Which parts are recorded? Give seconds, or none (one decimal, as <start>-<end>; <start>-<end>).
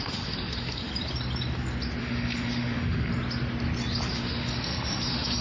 0.9-2.0; 3.1-4.1